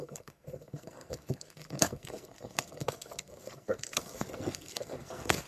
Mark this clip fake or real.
fake